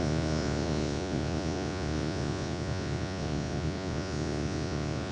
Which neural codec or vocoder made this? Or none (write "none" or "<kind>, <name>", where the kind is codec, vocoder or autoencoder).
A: vocoder, Vocos